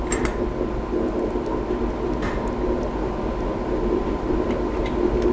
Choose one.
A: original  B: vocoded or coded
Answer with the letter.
A